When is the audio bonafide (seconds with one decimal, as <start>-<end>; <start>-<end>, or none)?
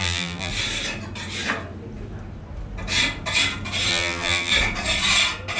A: 0.5-3.9; 4.5-5.6